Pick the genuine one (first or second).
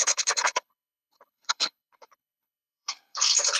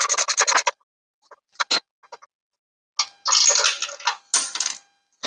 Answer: second